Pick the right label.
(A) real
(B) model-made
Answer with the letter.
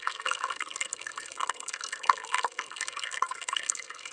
B